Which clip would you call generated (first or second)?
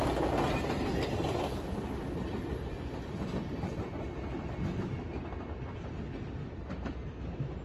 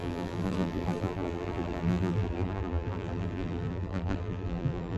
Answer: second